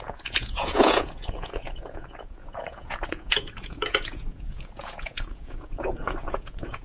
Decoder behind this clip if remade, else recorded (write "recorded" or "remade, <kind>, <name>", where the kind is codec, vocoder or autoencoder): remade, vocoder, Vocos